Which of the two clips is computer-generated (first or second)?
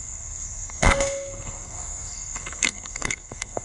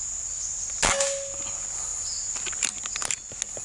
first